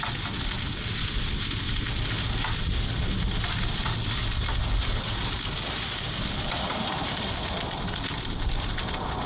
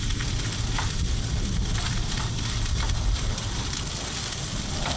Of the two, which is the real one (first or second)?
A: first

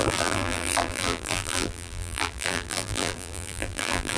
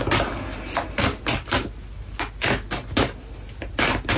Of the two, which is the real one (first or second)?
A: second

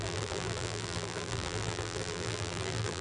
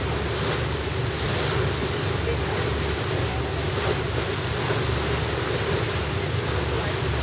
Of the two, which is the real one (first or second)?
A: second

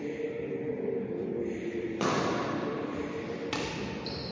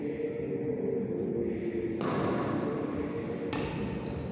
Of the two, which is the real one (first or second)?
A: second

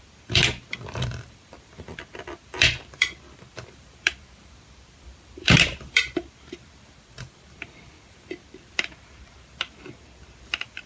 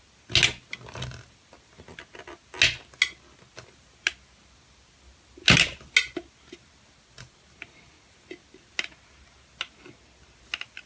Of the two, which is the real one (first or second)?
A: second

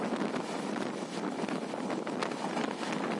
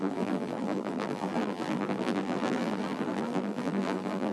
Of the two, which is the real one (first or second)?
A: first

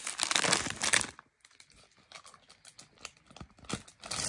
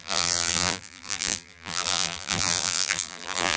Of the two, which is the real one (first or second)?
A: first